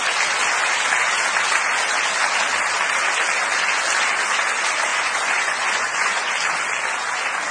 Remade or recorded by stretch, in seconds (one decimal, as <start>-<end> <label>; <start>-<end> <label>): 0.0-4.9 recorded; 4.9-6.3 remade; 6.3-7.5 recorded